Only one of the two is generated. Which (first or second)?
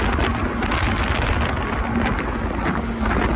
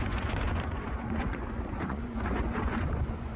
second